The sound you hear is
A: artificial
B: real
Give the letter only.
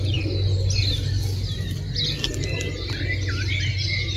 B